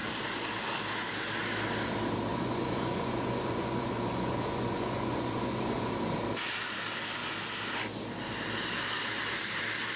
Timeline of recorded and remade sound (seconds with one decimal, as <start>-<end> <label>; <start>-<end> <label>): 0.0-2.3 recorded; 2.3-5.9 remade; 5.9-10.0 recorded